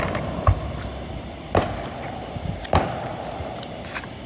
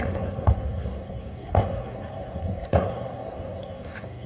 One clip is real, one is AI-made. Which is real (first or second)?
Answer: first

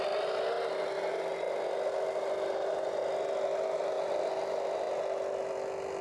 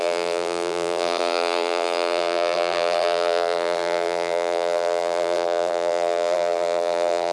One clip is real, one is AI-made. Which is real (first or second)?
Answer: first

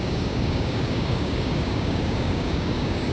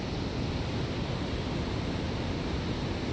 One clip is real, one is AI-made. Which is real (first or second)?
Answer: second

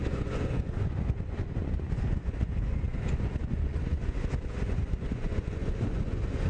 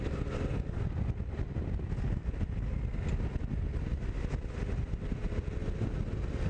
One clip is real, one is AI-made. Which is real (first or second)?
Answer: second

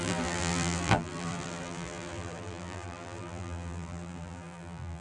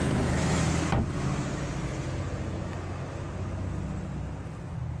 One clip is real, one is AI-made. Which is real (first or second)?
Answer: second